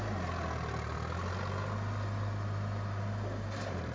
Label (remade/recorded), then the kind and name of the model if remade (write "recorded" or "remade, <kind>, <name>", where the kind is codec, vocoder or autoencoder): recorded